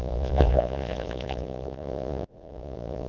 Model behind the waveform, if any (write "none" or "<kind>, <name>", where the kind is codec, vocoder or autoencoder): vocoder, Vocos